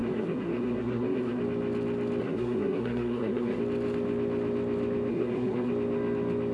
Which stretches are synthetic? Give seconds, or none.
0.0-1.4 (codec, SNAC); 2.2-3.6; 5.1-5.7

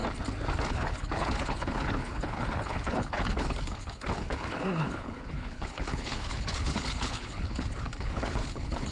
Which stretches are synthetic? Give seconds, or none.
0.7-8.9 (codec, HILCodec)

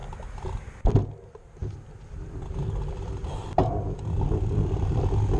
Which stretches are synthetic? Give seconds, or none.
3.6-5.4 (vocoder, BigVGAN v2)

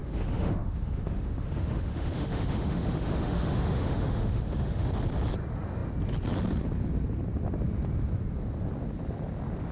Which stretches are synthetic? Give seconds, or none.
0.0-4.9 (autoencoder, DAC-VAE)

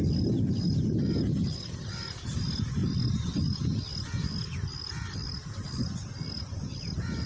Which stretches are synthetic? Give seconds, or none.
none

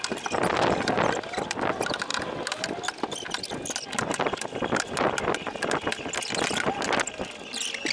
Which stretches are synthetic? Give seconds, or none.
none